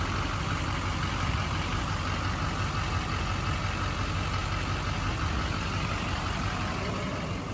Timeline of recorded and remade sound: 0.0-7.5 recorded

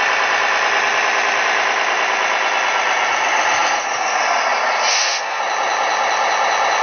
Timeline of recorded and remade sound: 0.0-4.9 recorded; 4.9-5.4 remade; 5.4-6.8 recorded

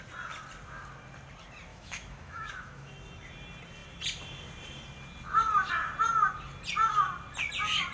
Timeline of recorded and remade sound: 0.0-1.7 recorded; 1.7-2.9 remade; 2.9-7.9 recorded

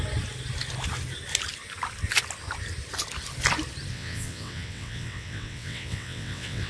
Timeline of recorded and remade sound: 0.0-3.9 recorded; 3.9-6.7 remade